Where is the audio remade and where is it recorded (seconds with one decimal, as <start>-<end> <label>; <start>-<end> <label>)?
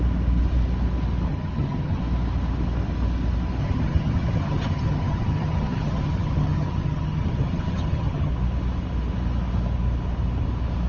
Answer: 0.0-1.3 recorded; 1.3-2.0 remade; 2.0-3.6 recorded; 3.6-8.3 remade; 8.3-10.9 recorded